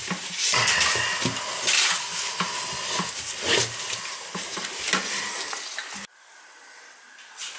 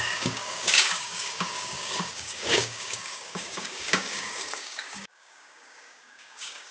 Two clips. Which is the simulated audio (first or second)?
second